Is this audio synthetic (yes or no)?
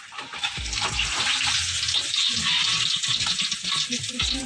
no